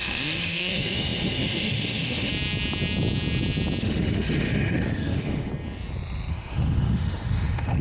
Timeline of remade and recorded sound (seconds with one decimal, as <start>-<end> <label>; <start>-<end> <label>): 0.0-2.3 remade; 2.3-3.8 recorded; 3.8-5.5 remade; 5.5-6.3 recorded; 6.3-7.8 remade